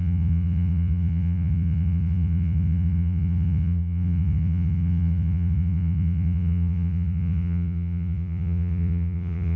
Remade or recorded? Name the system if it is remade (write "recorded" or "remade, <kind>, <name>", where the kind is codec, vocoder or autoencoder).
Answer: remade, vocoder, Vocos